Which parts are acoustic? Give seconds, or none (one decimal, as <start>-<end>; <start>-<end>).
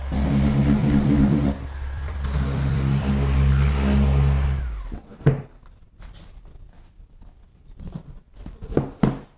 0.0-0.8; 3.1-5.1; 8.4-9.4